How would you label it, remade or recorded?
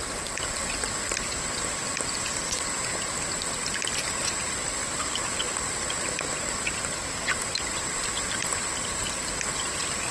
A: remade